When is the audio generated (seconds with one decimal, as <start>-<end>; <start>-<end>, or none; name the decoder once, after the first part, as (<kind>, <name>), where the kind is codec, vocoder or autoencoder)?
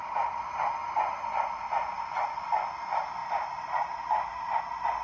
none